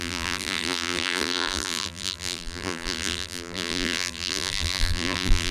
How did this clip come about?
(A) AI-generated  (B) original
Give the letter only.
A